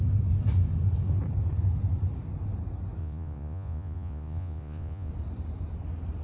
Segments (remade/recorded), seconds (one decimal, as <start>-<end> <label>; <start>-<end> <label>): 0.0-3.0 recorded; 3.0-5.1 remade; 5.1-6.2 recorded